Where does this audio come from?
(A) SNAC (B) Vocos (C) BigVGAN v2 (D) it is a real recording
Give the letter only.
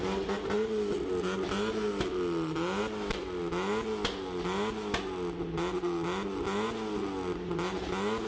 D